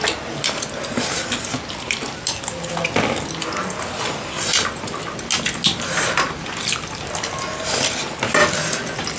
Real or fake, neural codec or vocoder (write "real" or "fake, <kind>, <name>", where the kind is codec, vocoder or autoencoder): real